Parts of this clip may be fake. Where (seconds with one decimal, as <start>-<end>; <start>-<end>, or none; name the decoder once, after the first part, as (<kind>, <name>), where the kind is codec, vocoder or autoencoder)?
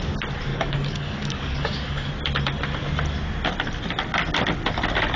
0.5-2.1 (codec, DAC)